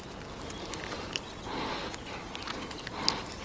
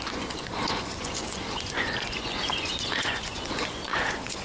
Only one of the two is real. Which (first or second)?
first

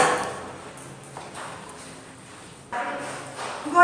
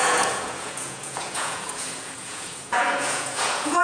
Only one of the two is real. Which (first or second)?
first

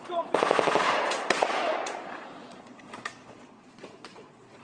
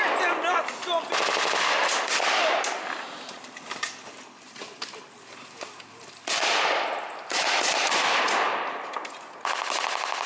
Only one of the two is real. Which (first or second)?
second